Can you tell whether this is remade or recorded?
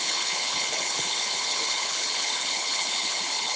remade